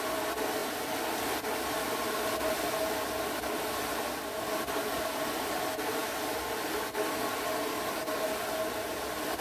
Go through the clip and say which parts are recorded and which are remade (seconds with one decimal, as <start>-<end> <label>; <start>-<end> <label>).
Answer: 0.0-9.4 recorded